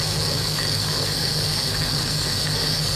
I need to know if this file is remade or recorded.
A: remade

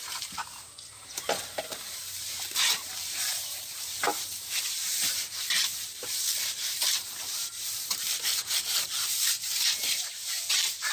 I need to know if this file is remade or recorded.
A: remade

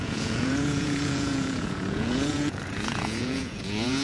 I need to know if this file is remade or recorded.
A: remade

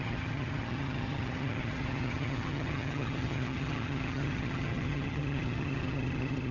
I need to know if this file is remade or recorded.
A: remade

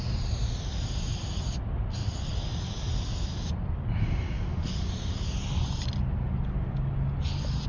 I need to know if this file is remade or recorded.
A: recorded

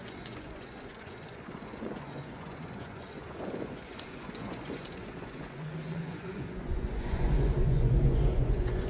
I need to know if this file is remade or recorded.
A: remade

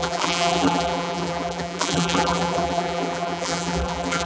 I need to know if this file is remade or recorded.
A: remade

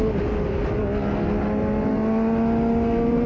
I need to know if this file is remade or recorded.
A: recorded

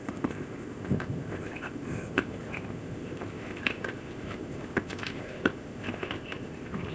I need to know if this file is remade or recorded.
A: remade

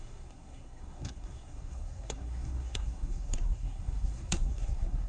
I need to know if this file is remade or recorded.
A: remade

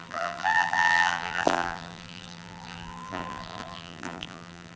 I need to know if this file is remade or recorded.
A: remade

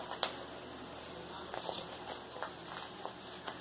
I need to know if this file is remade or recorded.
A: recorded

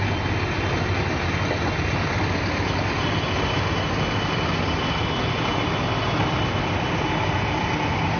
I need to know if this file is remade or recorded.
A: recorded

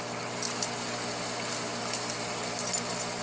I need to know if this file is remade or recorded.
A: recorded